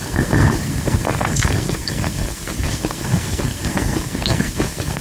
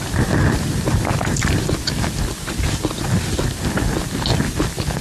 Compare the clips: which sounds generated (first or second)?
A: first